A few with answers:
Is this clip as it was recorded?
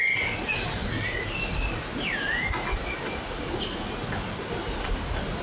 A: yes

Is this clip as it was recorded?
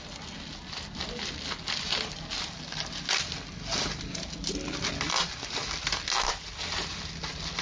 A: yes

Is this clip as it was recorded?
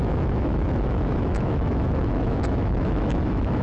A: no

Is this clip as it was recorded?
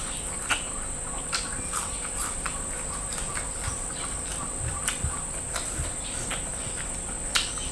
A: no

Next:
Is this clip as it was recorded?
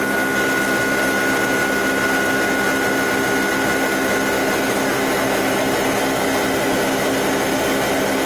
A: yes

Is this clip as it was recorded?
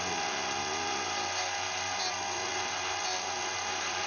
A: yes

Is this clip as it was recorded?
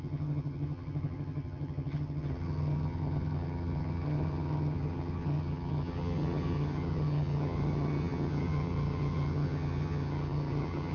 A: no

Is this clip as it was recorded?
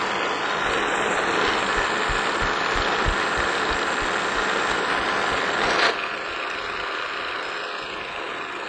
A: yes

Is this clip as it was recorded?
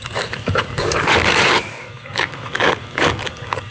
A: no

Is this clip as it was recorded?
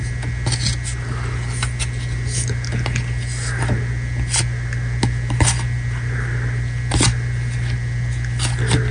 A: yes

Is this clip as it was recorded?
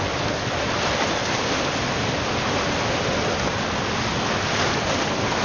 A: yes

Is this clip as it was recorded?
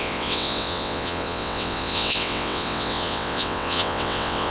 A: no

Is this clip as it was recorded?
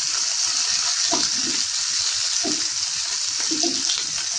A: yes